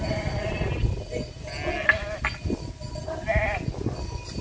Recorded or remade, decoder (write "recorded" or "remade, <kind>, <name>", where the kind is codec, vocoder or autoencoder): recorded